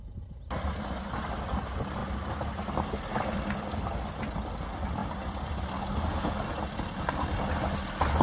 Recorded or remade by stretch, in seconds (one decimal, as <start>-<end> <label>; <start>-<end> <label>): 0.0-5.0 recorded; 5.0-5.7 remade; 5.7-8.2 recorded